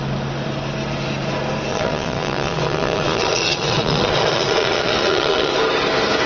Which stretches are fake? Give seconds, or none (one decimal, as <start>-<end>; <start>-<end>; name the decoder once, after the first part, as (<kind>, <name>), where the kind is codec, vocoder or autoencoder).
1.7-5.5 (vocoder, Vocos)